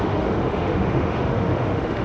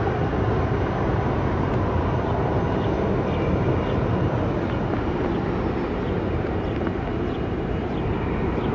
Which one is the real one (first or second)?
second